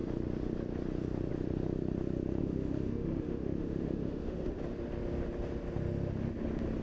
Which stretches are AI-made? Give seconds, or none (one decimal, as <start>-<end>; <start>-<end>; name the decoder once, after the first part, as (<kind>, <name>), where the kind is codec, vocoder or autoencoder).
2.4-4.6 (autoencoder, DAC-VAE)